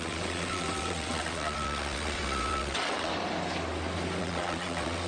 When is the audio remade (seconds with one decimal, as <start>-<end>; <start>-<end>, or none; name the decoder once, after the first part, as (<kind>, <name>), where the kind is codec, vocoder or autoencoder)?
0.0-3.1 (vocoder, WaveNeXt); 4.2-5.1